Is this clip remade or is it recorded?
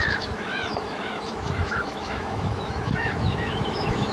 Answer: remade